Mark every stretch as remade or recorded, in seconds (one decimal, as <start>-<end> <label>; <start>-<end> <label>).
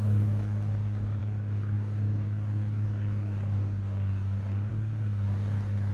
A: 0.0-5.9 remade